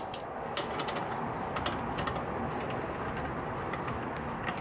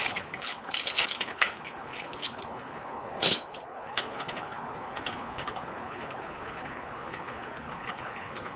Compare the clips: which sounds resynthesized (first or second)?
second